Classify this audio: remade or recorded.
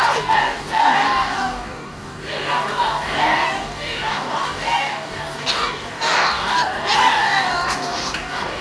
remade